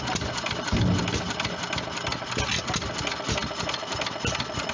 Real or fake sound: real